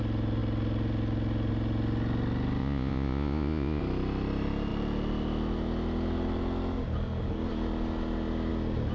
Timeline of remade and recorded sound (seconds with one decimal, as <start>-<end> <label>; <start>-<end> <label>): 0.0-2.6 recorded; 2.6-3.8 remade; 3.8-8.9 recorded